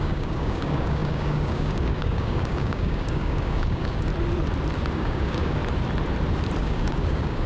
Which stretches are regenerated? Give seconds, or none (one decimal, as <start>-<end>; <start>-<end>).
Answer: 0.0-4.1; 4.9-5.6; 6.6-7.5